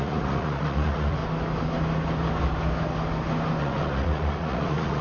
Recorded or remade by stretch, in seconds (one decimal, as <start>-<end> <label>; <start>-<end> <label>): 0.0-1.2 remade; 1.2-3.6 recorded; 3.6-5.0 remade